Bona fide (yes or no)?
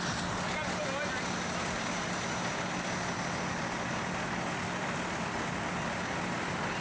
yes